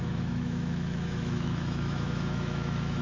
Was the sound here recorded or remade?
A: remade